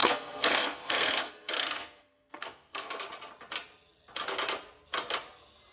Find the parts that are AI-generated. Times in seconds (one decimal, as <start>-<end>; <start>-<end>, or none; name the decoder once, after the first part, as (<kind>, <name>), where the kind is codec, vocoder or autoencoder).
0.0-3.0 (codec, SNAC)